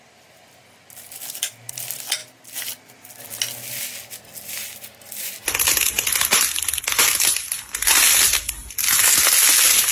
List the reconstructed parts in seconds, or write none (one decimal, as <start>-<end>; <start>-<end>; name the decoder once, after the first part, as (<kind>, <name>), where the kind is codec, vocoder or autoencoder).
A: none